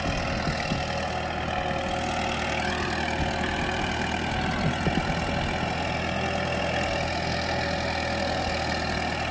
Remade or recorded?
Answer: recorded